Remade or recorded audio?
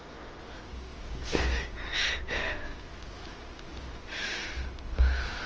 recorded